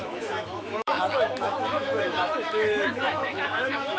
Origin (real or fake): fake